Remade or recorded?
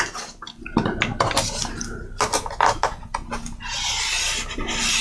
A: recorded